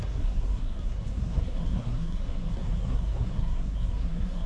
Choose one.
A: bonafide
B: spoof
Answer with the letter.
B